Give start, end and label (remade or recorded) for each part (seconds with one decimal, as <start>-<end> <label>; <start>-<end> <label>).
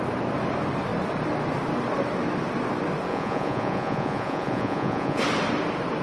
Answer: 0.0-3.1 recorded; 3.1-5.2 remade; 5.2-6.0 recorded